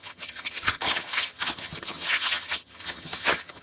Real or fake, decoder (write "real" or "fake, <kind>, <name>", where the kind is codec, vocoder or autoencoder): fake, vocoder, HiFi-GAN